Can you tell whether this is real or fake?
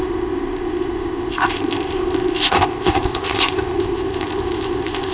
fake